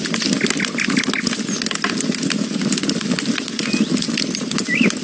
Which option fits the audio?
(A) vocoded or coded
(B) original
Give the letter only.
B